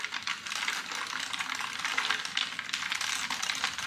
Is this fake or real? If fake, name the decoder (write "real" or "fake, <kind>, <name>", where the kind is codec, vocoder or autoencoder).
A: real